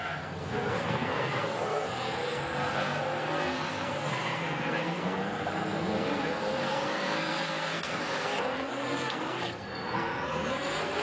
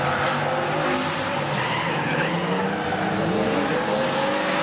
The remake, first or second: first